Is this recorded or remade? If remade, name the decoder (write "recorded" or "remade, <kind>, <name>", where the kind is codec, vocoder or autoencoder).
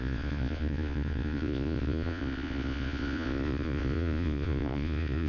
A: remade, vocoder, Vocos